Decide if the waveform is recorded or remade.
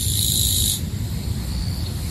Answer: recorded